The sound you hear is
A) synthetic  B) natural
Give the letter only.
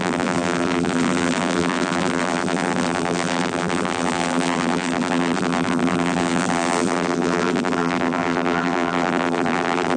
A